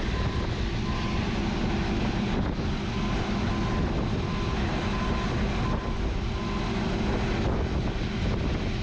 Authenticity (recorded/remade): recorded